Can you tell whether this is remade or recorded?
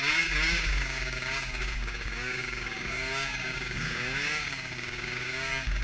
remade